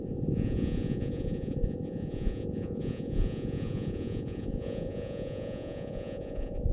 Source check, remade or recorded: remade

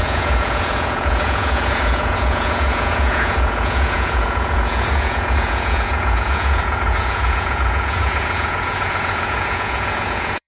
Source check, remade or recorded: remade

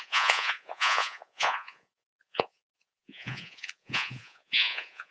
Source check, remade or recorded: remade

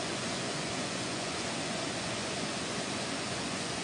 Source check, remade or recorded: remade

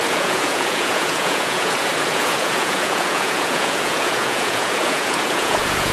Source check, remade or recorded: remade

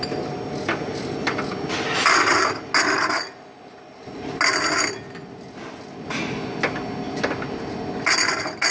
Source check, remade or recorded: recorded